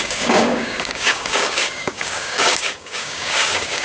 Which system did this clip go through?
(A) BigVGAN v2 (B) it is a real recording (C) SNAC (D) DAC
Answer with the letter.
D